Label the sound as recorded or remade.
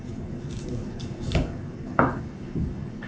remade